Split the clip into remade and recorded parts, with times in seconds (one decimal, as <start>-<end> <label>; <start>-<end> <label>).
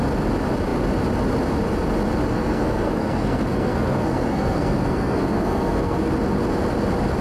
0.0-2.3 recorded; 2.3-6.1 remade; 6.1-7.2 recorded